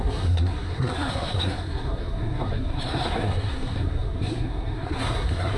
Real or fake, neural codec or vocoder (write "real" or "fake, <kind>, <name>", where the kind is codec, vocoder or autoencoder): fake, codec, SNAC